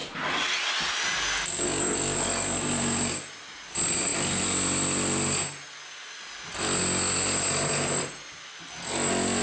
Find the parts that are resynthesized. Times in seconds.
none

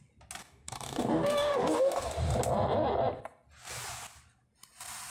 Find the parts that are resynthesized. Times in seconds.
0.4-2.1 (codec, DAC)

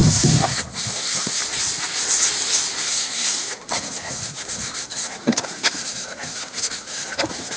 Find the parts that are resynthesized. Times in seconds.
0.0-1.4 (codec, SNAC); 2.8-7.6

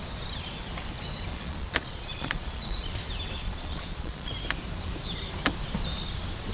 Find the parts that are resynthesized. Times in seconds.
1.3-2.9 (vocoder, Vocos); 3.4-4.3

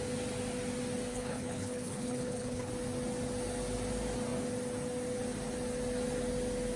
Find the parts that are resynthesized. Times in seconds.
1.1-2.7 (codec, HILCodec)

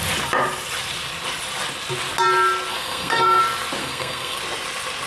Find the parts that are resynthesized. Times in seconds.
2.7-3.4 (codec, SNAC); 3.8-4.4

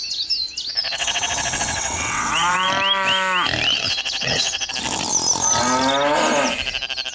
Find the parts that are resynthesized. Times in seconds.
0.8-2.7 (vocoder, WaveNeXt); 3.7-4.7

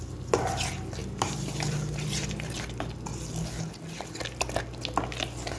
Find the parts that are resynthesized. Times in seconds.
1.0-2.5 (vocoder, BigVGAN v2)